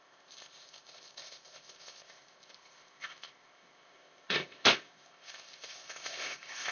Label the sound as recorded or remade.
remade